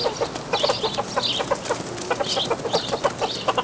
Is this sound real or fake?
real